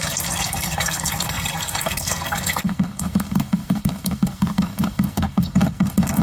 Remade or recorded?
remade